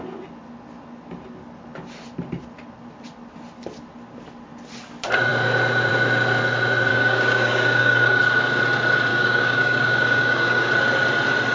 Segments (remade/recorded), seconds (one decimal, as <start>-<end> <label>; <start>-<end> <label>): 0.0-6.9 recorded; 6.9-8.2 remade; 8.2-9.1 recorded; 9.1-10.7 remade; 10.7-11.5 recorded

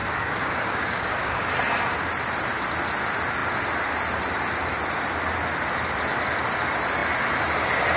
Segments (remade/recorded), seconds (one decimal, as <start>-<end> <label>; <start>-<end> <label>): 0.0-1.5 remade; 1.5-8.0 recorded

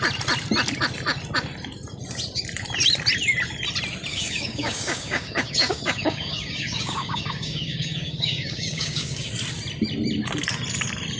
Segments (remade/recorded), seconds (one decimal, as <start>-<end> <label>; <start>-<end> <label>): 0.0-4.1 recorded; 4.1-9.3 remade; 9.3-11.2 recorded

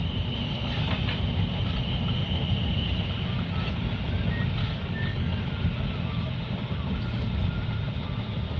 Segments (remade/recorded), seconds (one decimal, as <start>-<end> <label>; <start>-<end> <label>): 0.0-4.6 recorded; 4.6-5.4 remade; 5.4-8.6 recorded

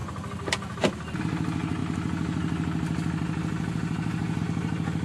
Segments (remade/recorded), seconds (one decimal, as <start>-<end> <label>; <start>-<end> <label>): 0.0-5.0 recorded

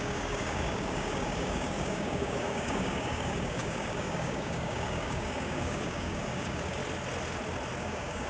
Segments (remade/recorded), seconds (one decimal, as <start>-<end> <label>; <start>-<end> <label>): 0.0-6.8 remade; 6.8-7.8 recorded; 7.8-8.3 remade

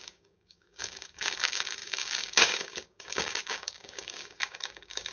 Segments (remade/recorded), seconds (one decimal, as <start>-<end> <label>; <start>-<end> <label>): 0.0-5.1 remade